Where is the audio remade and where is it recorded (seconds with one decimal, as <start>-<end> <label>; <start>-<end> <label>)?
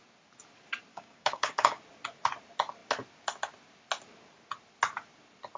0.0-0.9 recorded; 0.9-1.8 remade; 1.8-5.6 recorded